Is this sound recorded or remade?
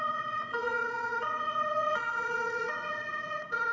remade